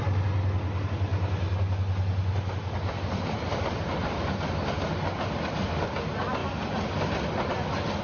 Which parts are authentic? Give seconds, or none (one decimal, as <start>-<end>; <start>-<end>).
0.0-8.0